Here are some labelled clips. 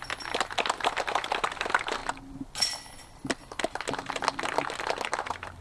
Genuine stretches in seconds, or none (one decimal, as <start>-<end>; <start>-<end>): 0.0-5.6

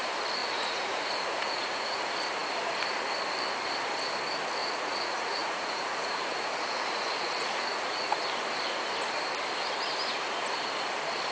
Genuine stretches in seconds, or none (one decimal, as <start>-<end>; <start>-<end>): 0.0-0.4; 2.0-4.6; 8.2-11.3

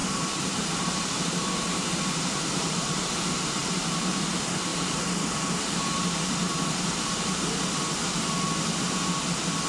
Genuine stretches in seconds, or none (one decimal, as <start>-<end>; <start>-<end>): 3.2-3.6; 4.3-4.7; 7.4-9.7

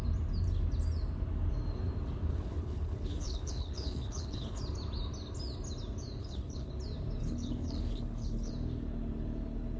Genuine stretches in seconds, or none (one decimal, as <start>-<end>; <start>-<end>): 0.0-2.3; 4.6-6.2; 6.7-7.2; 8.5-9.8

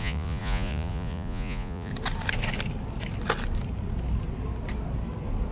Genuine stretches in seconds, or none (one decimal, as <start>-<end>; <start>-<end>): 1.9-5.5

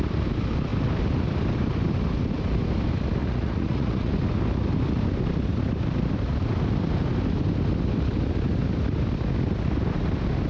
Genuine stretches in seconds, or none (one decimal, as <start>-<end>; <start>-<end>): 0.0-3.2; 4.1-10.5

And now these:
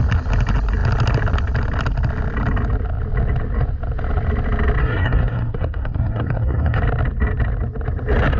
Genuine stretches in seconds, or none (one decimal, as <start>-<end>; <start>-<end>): 0.0-4.8; 6.8-8.4

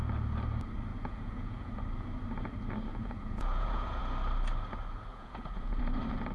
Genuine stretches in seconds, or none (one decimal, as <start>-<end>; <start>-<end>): 0.0-0.9; 1.7-2.9; 4.0-5.1; 5.8-6.3